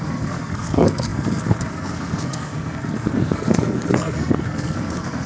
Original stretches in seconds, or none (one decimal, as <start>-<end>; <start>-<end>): none